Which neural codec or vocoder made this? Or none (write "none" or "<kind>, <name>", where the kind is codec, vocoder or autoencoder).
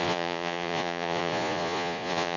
vocoder, Vocos